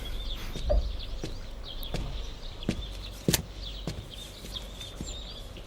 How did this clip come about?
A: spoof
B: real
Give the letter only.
B